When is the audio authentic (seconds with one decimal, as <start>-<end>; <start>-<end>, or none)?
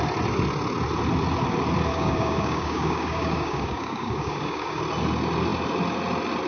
0.0-1.9; 4.8-6.5